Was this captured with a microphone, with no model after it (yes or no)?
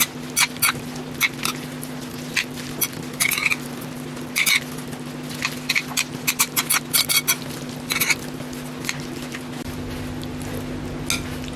yes